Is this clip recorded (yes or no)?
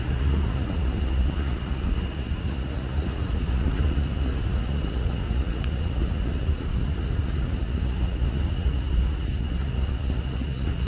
no